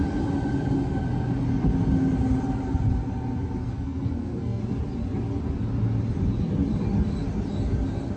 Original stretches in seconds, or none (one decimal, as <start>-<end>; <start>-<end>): 0.0-3.6; 4.6-8.2